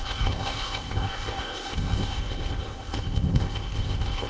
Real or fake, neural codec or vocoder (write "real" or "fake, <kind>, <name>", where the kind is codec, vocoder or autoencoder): fake, codec, ZipCodec